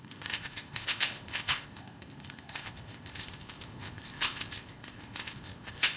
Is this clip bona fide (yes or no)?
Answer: no